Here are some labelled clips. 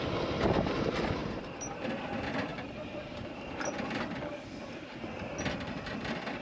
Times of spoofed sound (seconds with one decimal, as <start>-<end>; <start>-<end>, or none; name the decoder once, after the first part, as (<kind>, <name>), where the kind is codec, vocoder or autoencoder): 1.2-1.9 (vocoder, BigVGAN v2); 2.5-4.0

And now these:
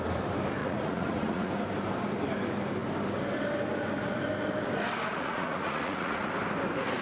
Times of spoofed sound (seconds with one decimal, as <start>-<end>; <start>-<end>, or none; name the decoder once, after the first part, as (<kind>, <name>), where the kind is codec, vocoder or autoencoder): 0.6-1.5 (vocoder, Vocos); 5.1-6.3

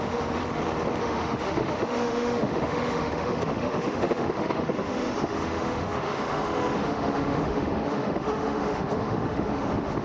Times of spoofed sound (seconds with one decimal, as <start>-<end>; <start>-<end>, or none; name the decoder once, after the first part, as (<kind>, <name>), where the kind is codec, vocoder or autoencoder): 0.0-0.4 (autoencoder, DAC-VAE); 1.0-10.0

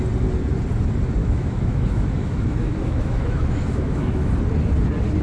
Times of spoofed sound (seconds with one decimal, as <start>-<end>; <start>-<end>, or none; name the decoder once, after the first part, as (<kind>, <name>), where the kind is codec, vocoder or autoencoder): 1.2-4.3 (autoencoder, DAC-VAE)